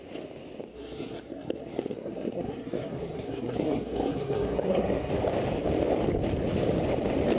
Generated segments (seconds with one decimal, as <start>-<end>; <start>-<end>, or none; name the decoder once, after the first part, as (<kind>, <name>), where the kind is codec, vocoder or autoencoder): 0.7-5.1 (codec, SNAC)